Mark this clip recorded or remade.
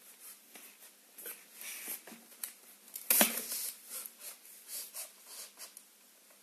recorded